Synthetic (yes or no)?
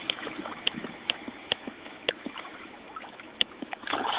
yes